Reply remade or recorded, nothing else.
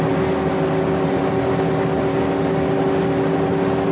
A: recorded